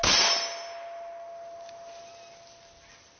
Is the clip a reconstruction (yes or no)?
no